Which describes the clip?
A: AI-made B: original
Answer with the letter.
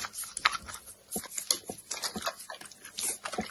B